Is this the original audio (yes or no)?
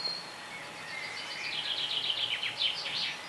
yes